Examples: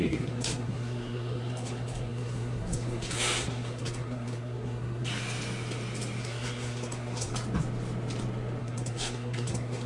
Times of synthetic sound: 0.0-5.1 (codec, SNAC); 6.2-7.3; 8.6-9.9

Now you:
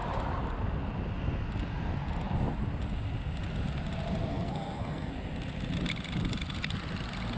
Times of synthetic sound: 4.3-5.1 (codec, SNAC)

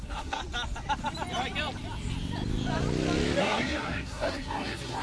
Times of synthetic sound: 0.0-0.4 (codec, SNAC); 3.4-5.0

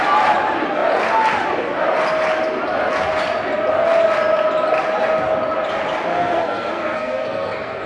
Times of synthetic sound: 6.1-7.9 (codec, SNAC)

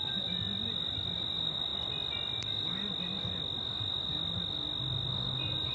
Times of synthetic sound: none

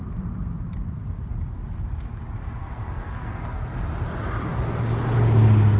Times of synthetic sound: 2.6-3.7 (codec, SNAC)